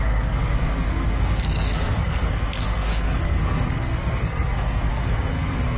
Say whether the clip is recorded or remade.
remade